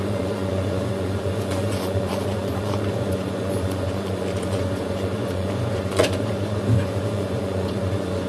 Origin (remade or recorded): remade